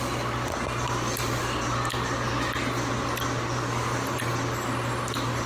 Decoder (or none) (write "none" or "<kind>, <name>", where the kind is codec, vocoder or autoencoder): none